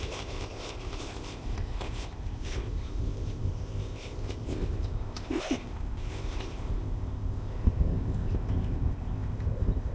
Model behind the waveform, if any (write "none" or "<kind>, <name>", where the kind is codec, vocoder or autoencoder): codec, ZipCodec